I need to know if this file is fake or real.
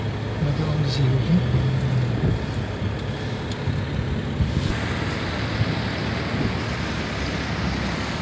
real